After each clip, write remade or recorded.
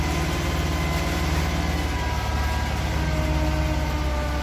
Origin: recorded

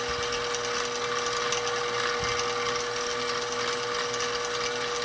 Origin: recorded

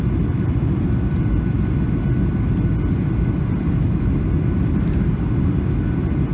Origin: recorded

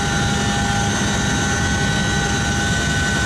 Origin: recorded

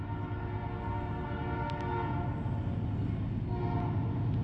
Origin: recorded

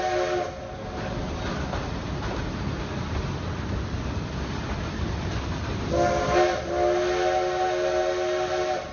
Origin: recorded